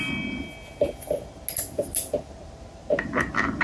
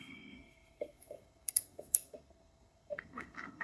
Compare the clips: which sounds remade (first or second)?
second